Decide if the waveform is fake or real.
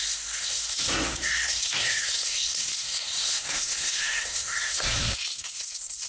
fake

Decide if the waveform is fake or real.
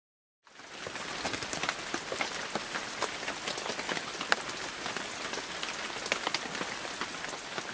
real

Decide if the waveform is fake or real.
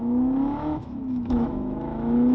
fake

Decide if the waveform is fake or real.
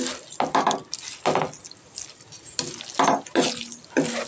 real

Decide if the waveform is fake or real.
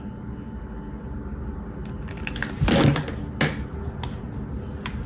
real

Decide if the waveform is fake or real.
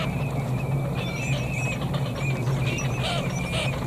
real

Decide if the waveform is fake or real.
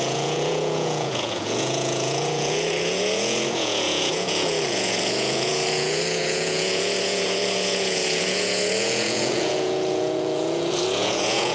fake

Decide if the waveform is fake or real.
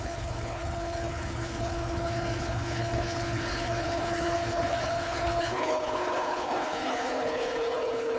fake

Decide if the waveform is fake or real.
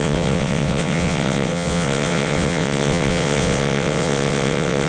fake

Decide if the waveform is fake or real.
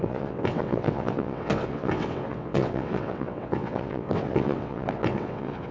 fake